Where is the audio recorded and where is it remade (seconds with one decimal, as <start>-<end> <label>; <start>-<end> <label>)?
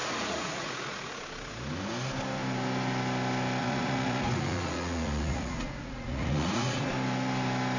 0.0-1.2 remade; 1.2-3.6 recorded; 3.6-6.9 remade; 6.9-7.8 recorded